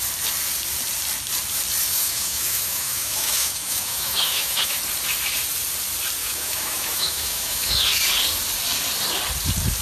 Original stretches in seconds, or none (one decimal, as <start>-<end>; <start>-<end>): 0.0-1.9; 4.8-6.2; 8.0-9.8